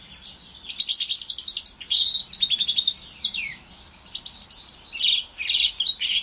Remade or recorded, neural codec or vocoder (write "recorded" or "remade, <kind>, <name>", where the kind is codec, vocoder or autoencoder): recorded